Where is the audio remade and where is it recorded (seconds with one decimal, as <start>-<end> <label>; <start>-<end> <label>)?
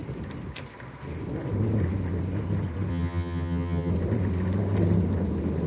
0.0-2.9 recorded; 2.9-3.9 remade; 3.9-5.7 recorded